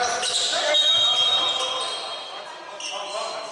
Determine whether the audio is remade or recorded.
recorded